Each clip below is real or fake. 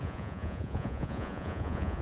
fake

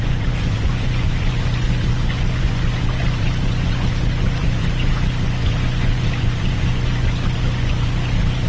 fake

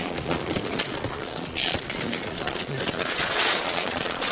fake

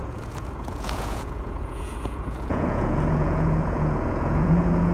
fake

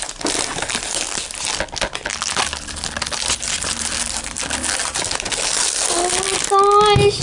real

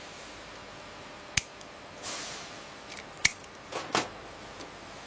real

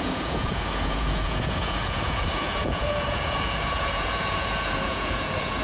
fake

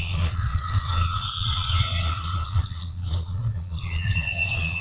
fake